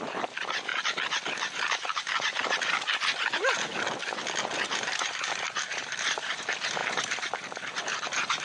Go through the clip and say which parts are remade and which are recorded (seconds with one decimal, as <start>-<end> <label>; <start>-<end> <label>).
0.0-0.7 remade; 0.7-1.7 recorded; 1.7-3.7 remade; 3.7-4.4 recorded; 4.4-8.4 remade